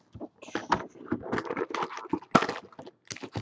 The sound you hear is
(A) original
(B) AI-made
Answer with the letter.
A